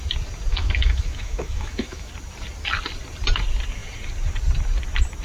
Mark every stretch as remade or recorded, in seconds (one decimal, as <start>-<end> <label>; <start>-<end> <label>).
0.0-0.5 recorded; 0.5-2.1 remade; 2.1-5.2 recorded